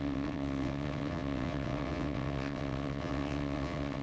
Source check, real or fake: fake